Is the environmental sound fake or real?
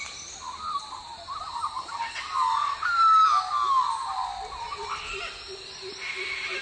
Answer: real